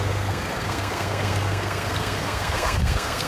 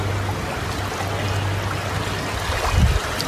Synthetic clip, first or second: first